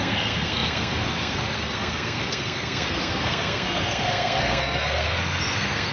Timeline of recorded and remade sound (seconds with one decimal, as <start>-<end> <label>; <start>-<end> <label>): 0.0-5.9 remade